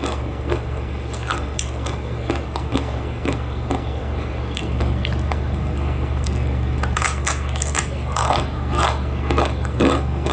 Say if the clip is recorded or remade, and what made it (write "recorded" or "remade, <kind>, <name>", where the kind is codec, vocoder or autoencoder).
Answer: remade, codec, SNAC